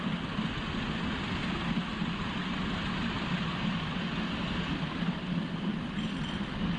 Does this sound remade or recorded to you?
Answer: recorded